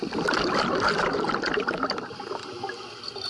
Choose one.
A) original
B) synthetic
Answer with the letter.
A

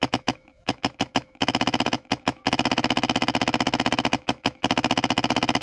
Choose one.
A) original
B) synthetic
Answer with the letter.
B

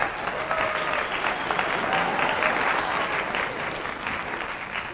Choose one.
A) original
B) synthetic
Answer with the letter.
A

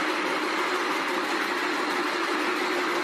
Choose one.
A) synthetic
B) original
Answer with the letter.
B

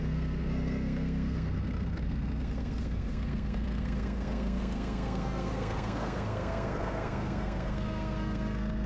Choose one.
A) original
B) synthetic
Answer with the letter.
B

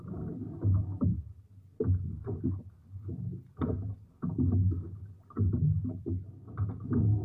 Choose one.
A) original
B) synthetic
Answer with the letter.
A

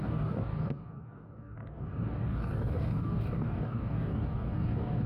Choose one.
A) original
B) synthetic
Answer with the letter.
B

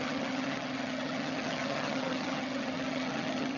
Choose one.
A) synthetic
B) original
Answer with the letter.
A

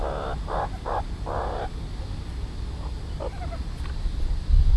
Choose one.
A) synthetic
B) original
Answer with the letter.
B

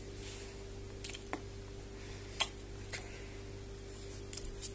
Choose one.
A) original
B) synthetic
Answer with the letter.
A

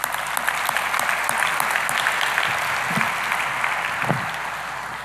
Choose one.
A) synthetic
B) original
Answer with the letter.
B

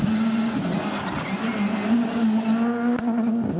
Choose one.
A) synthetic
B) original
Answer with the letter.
B